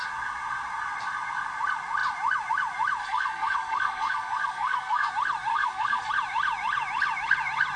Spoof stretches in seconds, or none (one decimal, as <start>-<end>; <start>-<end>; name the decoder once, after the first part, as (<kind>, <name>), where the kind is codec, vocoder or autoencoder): 3.0-5.1 (codec, SNAC); 5.5-6.1